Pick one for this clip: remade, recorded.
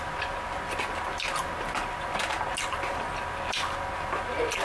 recorded